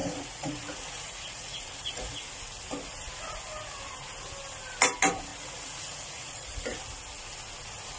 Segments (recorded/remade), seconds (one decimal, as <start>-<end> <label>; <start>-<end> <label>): 0.0-2.3 remade; 2.3-5.3 recorded; 5.3-6.8 remade; 6.8-8.0 recorded